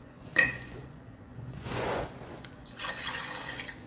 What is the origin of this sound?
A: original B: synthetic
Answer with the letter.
B